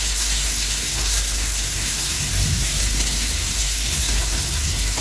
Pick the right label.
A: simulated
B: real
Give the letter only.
A